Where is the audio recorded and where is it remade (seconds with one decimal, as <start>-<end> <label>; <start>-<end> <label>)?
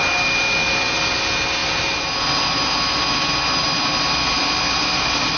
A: 0.0-5.4 recorded